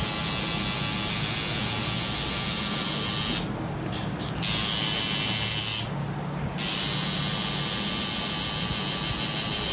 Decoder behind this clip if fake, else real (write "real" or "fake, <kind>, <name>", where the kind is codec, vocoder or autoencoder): real